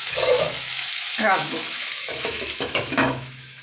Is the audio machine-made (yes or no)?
yes